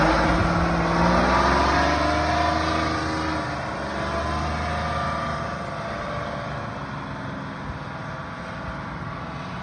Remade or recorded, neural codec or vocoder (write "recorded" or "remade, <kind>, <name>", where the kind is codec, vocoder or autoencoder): recorded